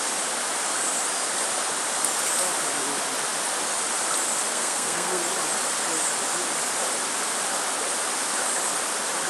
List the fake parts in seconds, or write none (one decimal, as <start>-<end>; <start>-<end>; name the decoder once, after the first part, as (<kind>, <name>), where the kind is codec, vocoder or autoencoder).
4.5-5.2 (codec, SNAC)